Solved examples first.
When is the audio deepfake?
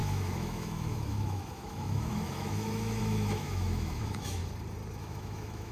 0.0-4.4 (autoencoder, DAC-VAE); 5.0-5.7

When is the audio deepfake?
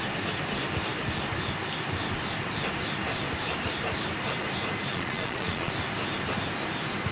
4.9-5.7 (vocoder, Vocos)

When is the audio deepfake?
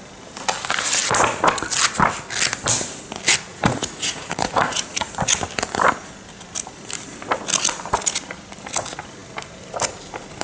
3.5-5.1 (vocoder, Vocos)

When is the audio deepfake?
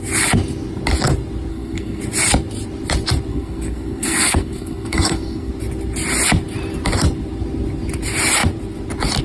1.5-2.0 (codec, SNAC); 3.3-5.5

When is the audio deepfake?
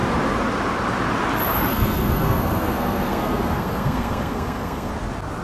1.7-4.9 (codec, SNAC)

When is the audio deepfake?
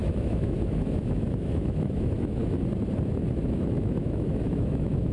0.0-2.4 (autoencoder, DAC-VAE); 3.3-5.1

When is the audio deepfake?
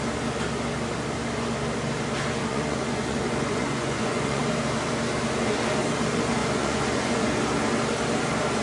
2.5-4.4 (vocoder, Vocos); 6.4-7.4